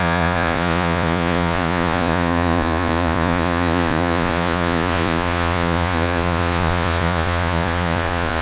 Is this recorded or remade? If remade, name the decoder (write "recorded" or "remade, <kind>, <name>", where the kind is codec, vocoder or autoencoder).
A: remade, vocoder, Vocos